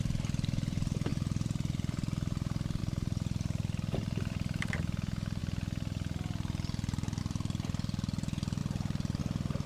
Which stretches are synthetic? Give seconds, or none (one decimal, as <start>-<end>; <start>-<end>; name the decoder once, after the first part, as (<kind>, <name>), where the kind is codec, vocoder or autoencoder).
0.0-5.4 (vocoder, BigVGAN v2); 7.2-9.7